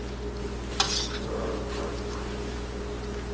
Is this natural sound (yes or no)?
yes